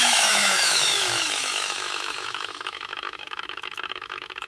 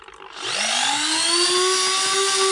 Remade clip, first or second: first